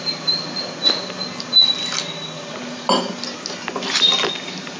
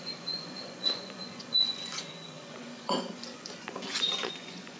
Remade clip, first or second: second